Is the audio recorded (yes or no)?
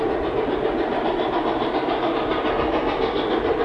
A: yes